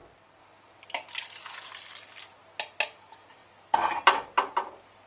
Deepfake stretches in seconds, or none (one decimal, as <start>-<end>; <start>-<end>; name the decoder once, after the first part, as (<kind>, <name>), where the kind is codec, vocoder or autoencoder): none